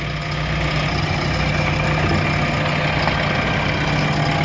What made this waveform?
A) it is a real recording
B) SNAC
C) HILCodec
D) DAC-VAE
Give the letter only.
A